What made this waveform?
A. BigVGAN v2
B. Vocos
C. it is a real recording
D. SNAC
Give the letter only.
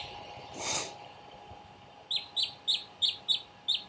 C